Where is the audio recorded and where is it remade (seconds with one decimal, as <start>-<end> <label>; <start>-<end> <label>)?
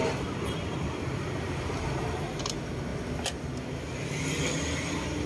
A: 0.0-5.3 recorded